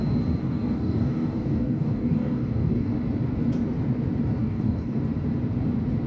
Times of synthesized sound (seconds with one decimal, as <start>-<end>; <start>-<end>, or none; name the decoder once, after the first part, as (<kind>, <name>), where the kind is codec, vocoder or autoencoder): 0.4-2.9 (codec, DAC); 4.4-5.0

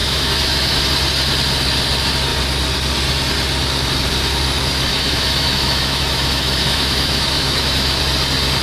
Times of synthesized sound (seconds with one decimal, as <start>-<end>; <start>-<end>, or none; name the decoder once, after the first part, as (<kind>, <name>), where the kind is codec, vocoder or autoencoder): 0.0-0.8 (autoencoder, DAC-VAE); 4.9-8.0

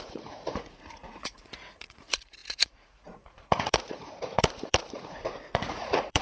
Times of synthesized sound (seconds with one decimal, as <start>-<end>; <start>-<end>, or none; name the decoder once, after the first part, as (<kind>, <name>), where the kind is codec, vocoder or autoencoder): 0.0-6.2 (vocoder, Vocos)

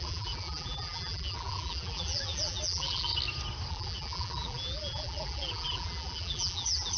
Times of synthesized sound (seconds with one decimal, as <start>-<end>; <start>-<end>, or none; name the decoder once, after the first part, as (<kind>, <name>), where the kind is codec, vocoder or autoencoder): 0.0-3.1 (vocoder, BigVGAN v2); 3.7-7.0

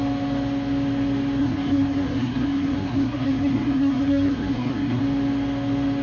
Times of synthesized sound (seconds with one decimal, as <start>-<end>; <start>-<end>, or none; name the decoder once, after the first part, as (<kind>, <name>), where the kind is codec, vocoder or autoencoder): 1.4-5.0 (codec, SNAC)

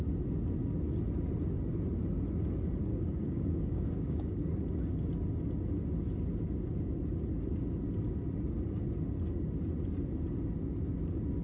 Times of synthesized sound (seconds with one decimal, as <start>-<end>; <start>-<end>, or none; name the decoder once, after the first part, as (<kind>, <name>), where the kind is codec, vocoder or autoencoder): 2.9-4.4 (codec, DAC)

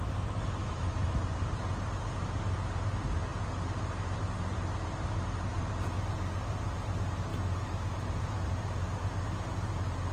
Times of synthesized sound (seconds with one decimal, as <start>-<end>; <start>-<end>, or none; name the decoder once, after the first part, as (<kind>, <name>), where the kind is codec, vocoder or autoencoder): 0.6-1.2 (autoencoder, DAC-VAE)

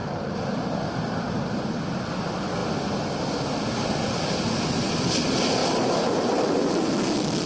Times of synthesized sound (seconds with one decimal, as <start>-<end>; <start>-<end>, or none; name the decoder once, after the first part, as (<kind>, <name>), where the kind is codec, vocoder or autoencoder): none